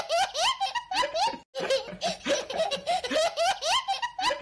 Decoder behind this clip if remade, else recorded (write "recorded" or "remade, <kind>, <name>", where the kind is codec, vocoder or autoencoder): recorded